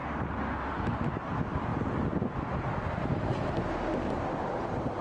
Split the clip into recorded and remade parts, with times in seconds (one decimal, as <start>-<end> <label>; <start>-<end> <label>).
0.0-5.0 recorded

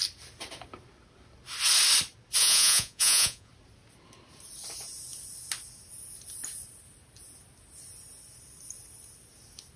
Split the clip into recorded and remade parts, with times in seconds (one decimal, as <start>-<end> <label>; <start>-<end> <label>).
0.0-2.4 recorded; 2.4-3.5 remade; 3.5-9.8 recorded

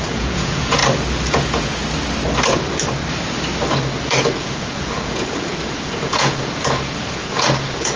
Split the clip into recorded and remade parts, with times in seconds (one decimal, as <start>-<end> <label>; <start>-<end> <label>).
0.0-0.8 remade; 0.8-1.3 recorded; 1.3-1.8 remade; 1.8-4.0 recorded; 4.0-8.0 remade

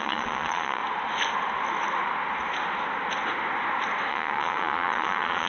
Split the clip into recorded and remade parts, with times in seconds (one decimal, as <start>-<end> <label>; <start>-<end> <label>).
0.0-0.8 remade; 0.8-4.1 recorded; 4.1-5.5 remade